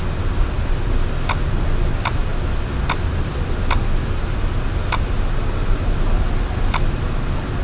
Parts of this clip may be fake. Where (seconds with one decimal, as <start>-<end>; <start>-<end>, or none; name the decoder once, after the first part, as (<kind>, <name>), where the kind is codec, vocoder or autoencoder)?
none